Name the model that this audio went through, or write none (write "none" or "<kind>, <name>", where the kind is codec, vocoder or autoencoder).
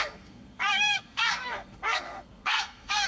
codec, SNAC